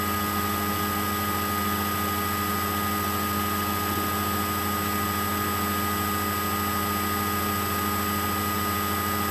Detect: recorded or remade recorded